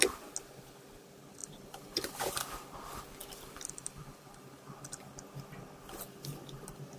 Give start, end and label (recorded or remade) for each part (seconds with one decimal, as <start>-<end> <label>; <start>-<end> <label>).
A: 0.0-1.4 recorded; 1.4-2.2 remade; 2.2-3.2 recorded; 3.2-5.2 remade; 5.2-7.0 recorded